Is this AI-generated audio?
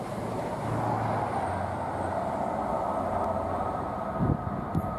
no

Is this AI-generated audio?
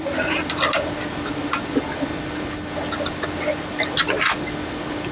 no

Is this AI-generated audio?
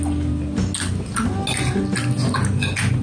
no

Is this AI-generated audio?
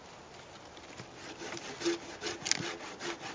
no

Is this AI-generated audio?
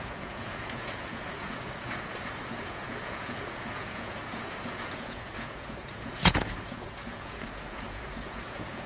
yes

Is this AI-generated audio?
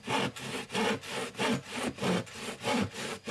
no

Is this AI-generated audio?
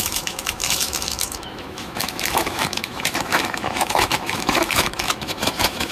yes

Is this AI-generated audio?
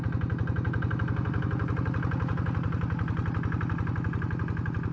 no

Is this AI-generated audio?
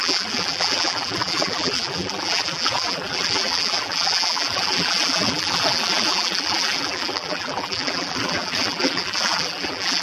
yes